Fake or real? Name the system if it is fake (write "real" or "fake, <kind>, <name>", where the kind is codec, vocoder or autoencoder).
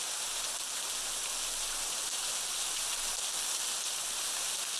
real